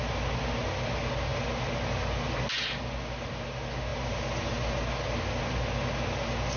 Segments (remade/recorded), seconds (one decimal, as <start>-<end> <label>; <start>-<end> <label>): 0.0-6.6 recorded